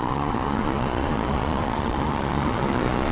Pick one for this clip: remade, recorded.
remade